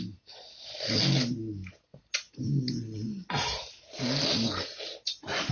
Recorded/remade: recorded